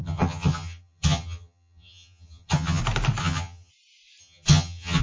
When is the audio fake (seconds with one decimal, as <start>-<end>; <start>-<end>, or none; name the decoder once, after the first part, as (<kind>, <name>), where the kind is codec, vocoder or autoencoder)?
0.0-2.8 (vocoder, HiFi-GAN); 3.2-3.7; 4.2-5.0